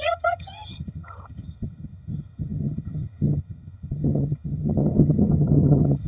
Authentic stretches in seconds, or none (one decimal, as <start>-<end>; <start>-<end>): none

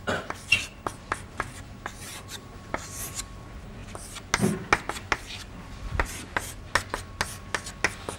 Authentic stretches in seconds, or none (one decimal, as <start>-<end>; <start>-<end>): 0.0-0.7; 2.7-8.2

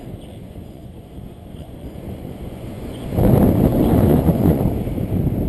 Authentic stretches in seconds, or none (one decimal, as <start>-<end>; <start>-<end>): 0.0-0.4; 3.3-3.7; 4.6-5.5

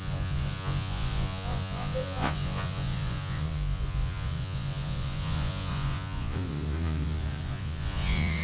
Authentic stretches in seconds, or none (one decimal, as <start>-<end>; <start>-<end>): none

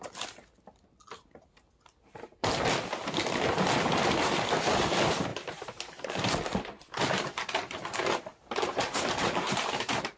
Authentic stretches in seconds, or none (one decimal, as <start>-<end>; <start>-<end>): 0.0-5.3; 6.3-8.3

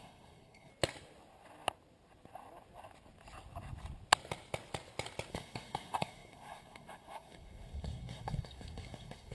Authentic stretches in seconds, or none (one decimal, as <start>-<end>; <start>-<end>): 0.7-5.3

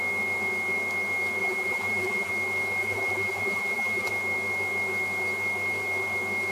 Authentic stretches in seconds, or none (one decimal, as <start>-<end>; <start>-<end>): 0.0-1.4; 2.3-2.8; 4.1-6.5